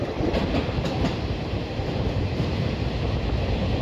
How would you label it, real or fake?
real